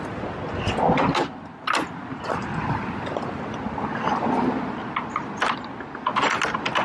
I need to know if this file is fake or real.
real